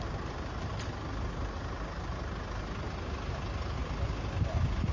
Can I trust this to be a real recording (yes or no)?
yes